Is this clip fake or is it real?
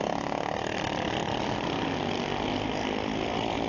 real